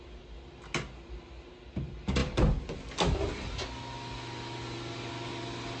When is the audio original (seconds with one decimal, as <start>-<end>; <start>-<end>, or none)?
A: 0.0-5.8